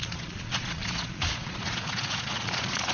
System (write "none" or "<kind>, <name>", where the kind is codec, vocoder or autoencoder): vocoder, Vocos